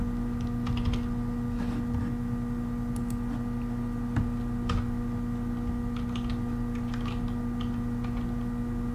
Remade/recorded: recorded